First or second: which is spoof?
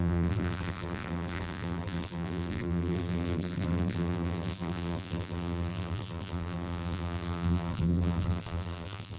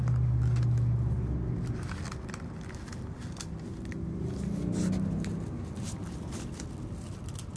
first